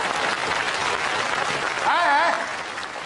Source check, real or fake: real